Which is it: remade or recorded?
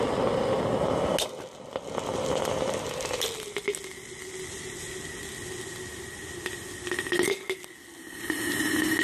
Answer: recorded